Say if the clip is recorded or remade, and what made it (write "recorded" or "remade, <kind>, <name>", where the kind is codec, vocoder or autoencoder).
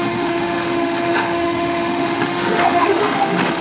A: remade, autoencoder, DAC-VAE